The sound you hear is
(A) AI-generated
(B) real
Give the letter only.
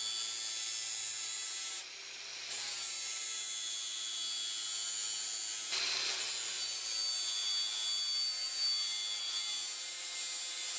B